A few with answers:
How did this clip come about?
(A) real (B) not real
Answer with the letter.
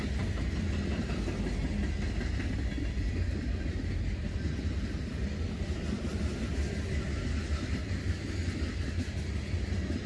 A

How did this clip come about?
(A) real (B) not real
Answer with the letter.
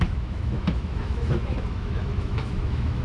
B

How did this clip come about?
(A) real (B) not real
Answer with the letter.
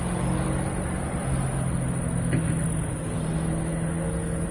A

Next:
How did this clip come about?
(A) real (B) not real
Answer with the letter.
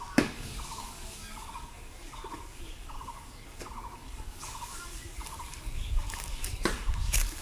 B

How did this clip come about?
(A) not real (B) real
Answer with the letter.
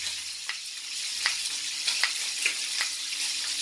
B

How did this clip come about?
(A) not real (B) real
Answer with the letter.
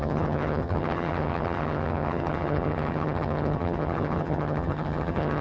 A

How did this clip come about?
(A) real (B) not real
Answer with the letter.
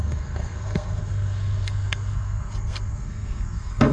B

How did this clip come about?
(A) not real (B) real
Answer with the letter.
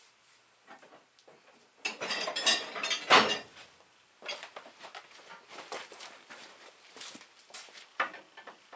B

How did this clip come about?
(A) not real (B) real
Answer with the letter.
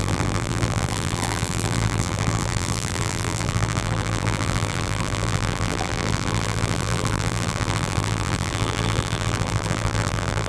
A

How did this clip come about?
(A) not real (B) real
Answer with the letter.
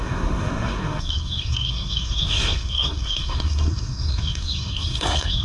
A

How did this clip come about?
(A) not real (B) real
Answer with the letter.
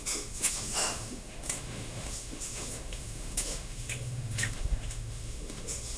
A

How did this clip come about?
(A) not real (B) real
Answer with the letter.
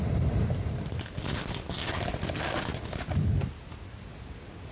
B